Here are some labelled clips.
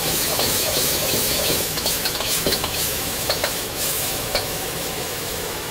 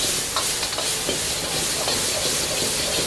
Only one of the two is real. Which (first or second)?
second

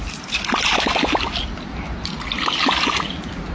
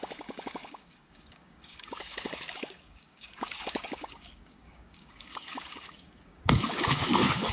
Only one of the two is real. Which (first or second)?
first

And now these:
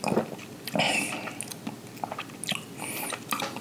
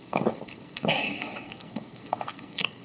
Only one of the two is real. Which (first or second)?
first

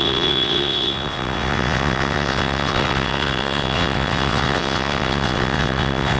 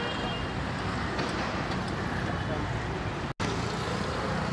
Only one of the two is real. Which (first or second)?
second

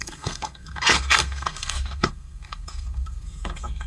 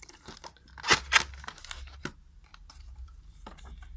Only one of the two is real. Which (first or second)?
second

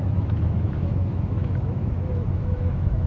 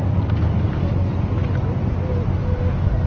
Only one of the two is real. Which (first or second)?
second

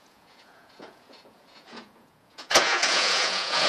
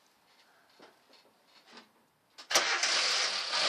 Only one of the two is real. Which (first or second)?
second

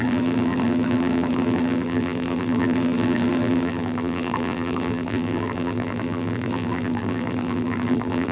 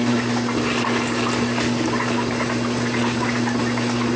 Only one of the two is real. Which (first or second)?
second